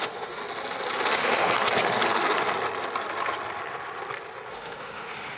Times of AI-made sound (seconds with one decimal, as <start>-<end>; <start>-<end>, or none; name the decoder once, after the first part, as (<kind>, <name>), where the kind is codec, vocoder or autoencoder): 0.0-0.4 (autoencoder, DAC-VAE); 1.1-1.5; 4.5-5.4